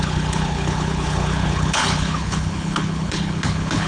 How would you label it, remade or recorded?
remade